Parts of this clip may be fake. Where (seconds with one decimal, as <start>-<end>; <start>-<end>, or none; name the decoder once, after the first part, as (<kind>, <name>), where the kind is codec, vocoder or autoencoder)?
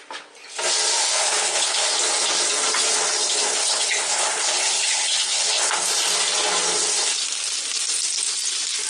1.0-1.9 (codec, HILCodec); 3.6-5.9